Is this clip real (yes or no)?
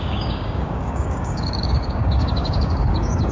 no